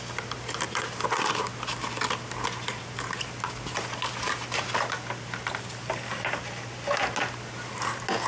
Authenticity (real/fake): real